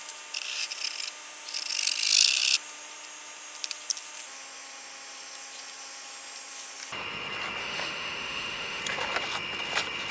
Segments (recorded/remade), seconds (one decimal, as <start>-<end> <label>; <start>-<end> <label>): 0.0-7.6 recorded; 7.6-8.8 remade; 8.8-10.1 recorded

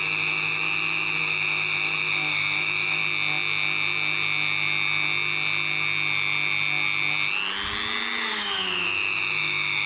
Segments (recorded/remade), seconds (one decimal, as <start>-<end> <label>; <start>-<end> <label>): 0.0-3.0 remade; 3.0-8.2 recorded; 8.2-9.9 remade

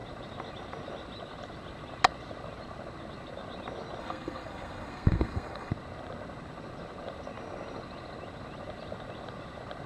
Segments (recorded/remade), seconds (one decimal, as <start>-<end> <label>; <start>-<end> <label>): 0.0-4.0 recorded; 4.0-5.7 remade; 5.7-9.9 recorded

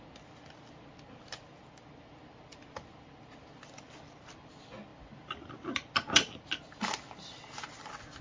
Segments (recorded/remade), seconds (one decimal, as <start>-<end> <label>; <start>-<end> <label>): 0.0-8.2 recorded